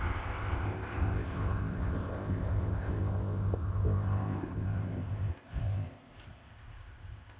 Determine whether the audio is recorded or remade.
remade